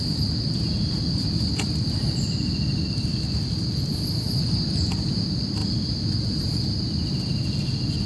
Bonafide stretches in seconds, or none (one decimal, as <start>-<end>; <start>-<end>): 0.0-8.1